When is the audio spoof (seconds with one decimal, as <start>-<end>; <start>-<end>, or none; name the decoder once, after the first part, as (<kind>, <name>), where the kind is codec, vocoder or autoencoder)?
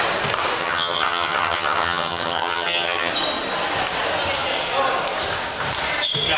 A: 0.6-3.1 (vocoder, HiFi-GAN)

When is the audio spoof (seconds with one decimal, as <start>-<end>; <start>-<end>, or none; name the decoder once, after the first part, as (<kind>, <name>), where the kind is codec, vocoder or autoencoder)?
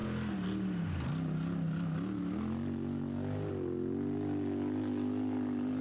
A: none